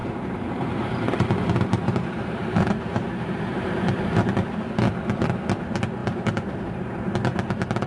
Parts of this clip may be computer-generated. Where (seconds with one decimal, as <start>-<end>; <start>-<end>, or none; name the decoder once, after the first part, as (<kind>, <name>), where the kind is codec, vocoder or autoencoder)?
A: 0.0-4.2 (vocoder, BigVGAN v2); 6.0-6.6